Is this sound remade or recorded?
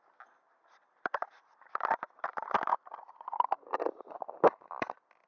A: remade